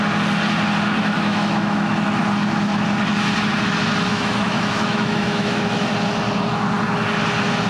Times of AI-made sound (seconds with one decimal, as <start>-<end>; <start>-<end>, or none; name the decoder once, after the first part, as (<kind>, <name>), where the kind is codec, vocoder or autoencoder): 1.0-2.2 (autoencoder, DAC-VAE); 4.1-5.9